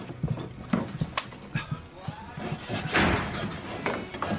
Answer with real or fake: real